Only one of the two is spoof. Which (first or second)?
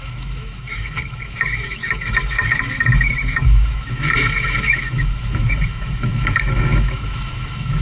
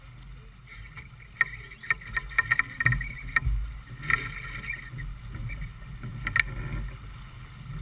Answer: first